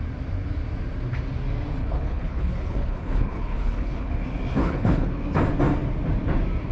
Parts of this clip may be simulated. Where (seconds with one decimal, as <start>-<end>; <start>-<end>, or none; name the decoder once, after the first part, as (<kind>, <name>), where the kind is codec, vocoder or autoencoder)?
1.8-4.1 (codec, HILCodec); 4.6-5.2